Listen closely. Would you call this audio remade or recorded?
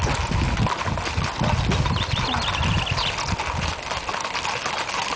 recorded